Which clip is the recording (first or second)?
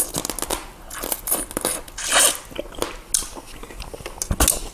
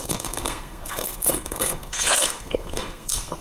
first